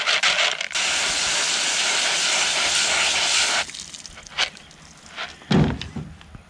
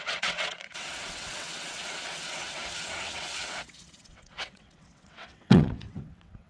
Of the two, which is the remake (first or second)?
second